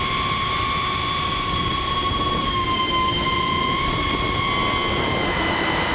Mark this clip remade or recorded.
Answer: remade